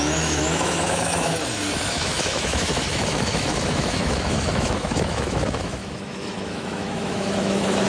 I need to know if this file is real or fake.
fake